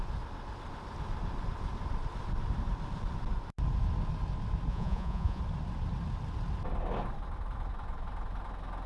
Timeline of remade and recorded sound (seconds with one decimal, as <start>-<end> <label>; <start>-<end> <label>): 0.0-4.7 recorded; 4.7-5.4 remade; 5.4-8.9 recorded